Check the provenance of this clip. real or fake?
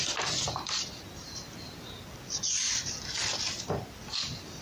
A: real